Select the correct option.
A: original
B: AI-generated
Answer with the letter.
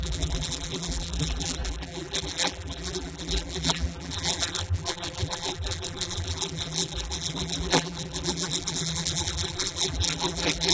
B